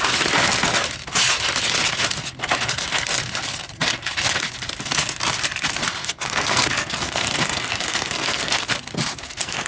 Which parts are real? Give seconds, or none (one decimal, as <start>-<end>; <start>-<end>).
0.0-6.0; 8.7-9.1